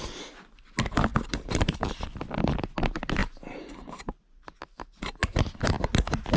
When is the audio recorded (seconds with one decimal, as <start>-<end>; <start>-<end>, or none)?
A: 0.0-1.1; 2.0-3.2; 4.0-6.4